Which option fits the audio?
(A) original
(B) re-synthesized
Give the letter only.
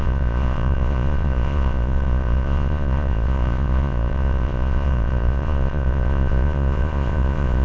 B